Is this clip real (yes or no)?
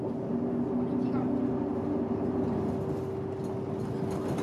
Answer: yes